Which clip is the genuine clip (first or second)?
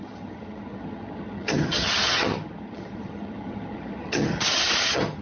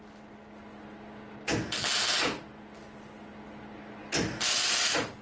second